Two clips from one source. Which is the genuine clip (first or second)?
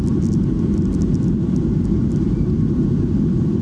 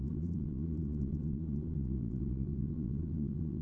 first